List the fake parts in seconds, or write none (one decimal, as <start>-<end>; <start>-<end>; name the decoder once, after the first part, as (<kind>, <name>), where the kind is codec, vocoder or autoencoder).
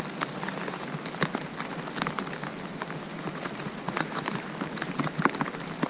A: 3.1-4.2 (vocoder, Vocos)